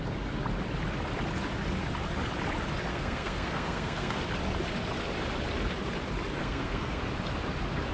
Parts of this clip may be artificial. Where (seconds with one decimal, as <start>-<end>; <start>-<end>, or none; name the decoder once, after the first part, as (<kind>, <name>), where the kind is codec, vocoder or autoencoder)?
2.9-4.2 (codec, SNAC); 6.4-7.0